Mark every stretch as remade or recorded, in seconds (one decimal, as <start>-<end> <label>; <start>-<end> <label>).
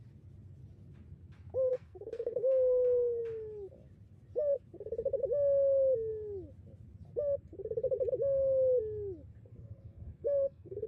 0.0-1.7 recorded; 1.7-3.2 remade; 3.2-9.5 recorded; 9.5-10.9 remade